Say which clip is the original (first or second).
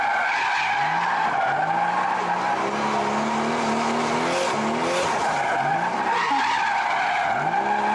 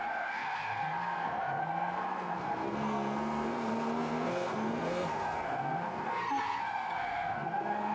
first